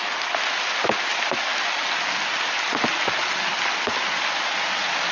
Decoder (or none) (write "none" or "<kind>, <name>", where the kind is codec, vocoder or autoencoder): none